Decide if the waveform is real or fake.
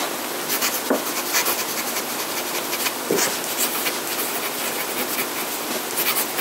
real